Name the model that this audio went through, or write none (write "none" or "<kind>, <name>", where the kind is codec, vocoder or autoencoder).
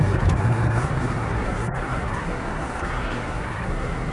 codec, SNAC